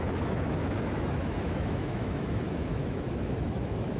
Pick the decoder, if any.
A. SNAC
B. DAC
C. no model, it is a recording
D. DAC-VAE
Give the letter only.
D